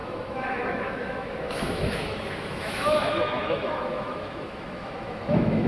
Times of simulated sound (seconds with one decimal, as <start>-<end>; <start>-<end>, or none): 0.0-5.7